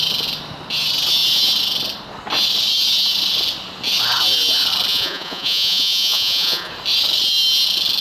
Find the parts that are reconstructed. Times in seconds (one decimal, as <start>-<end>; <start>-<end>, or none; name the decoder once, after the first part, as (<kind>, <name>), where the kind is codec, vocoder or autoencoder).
4.9-6.7 (vocoder, Vocos)